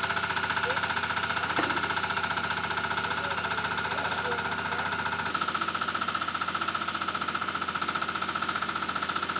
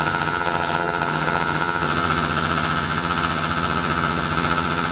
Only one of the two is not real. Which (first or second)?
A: second